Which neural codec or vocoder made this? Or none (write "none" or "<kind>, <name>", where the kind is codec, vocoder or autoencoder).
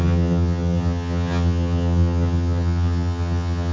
vocoder, HiFi-GAN